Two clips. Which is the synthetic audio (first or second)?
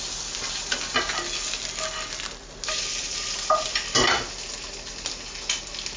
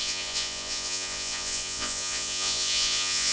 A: second